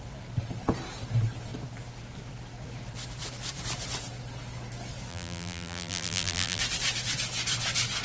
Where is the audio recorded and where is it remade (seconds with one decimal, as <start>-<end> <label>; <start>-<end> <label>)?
0.0-5.1 recorded; 5.1-6.6 remade; 6.6-8.0 recorded